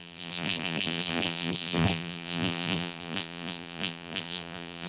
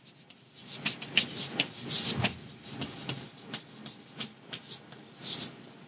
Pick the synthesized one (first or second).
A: first